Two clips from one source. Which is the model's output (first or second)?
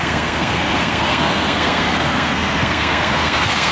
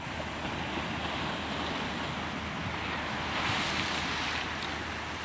first